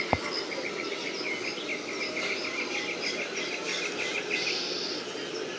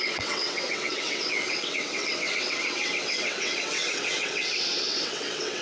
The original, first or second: first